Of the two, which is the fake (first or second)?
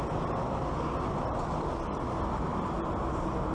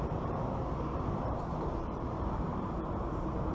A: second